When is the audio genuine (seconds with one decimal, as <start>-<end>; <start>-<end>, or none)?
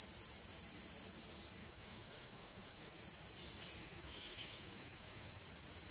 0.0-1.6; 3.0-3.8; 5.4-5.9